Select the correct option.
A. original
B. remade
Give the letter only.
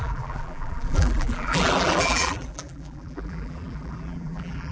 B